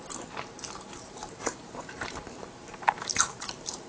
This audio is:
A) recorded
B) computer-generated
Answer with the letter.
B